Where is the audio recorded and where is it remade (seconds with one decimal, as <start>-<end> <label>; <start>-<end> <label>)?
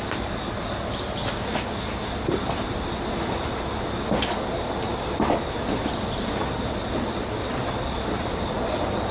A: 0.0-9.1 recorded